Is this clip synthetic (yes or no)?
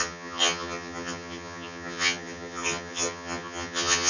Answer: yes